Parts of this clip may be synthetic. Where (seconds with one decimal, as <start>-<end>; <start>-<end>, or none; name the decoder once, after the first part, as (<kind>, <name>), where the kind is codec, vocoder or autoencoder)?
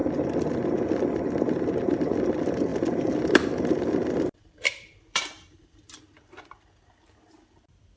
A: 2.7-6.0 (vocoder, BigVGAN v2)